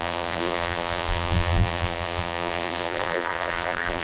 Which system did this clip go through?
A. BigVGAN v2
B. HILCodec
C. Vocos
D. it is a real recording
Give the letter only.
A